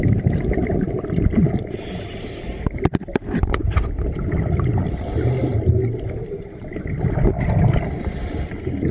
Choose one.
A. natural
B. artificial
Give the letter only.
A